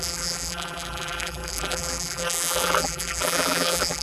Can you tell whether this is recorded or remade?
remade